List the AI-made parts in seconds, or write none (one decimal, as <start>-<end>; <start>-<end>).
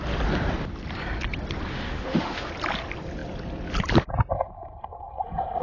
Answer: 1.7-2.5